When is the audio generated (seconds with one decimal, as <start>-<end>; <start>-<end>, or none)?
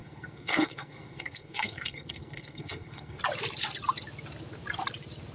0.0-3.2